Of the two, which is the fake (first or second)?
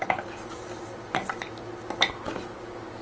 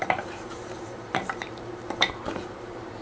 second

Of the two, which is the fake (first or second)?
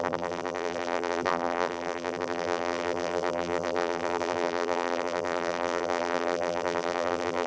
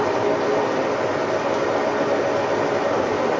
first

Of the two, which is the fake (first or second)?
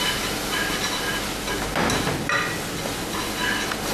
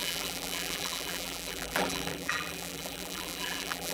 second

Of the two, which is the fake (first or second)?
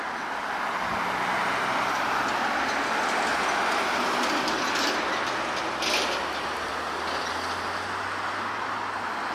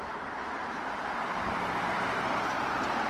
second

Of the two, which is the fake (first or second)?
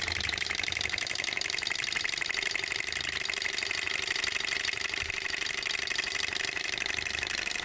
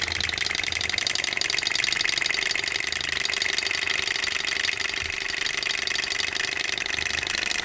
first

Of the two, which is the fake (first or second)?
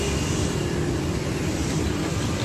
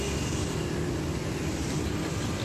first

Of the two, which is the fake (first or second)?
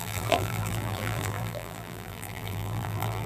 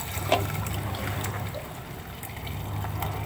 first